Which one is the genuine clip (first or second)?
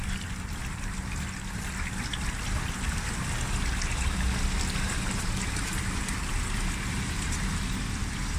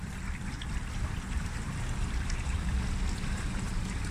first